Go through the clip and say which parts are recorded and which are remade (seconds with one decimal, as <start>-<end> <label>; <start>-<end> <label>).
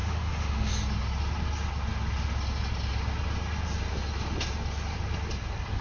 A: 0.0-0.7 remade; 0.7-5.8 recorded